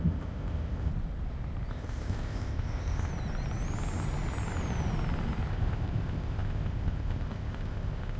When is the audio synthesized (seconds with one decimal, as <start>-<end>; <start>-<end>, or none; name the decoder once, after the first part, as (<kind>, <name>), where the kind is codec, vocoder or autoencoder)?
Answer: 0.0-0.9 (codec, ZipCodec); 1.7-3.1; 5.5-8.2